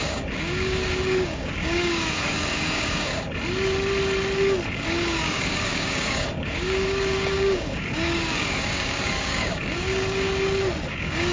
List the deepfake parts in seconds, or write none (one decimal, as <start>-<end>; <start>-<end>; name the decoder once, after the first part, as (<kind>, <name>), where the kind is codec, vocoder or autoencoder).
0.0-3.1 (codec, DAC); 4.7-10.3; 10.9-11.3

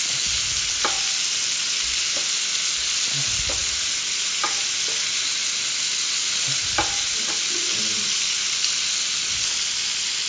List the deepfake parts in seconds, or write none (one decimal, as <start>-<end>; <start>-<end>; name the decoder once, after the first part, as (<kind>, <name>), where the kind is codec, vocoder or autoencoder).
none

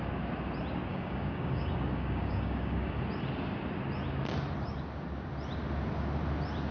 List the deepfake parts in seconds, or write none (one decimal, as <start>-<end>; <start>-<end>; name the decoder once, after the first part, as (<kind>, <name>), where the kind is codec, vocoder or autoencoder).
0.9-3.0 (codec, DAC)

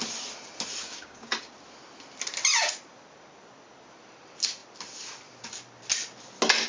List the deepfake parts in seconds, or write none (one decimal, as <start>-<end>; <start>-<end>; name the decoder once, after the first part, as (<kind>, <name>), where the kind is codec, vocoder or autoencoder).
0.8-1.3 (codec, DAC)

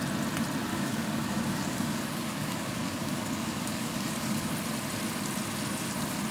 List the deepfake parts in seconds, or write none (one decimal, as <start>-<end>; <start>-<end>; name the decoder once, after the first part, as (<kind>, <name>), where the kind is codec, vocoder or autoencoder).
0.7-4.5 (codec, DAC)